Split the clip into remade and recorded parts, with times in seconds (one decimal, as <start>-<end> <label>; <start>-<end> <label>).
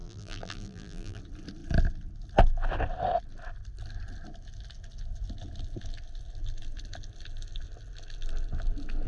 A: 0.0-1.2 remade; 1.2-9.1 recorded